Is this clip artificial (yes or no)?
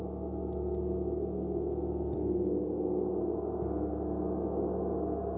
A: no